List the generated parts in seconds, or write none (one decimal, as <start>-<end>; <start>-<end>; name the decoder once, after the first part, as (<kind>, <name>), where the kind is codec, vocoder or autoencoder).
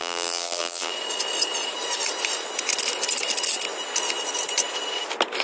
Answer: 0.0-0.9 (vocoder, BigVGAN v2)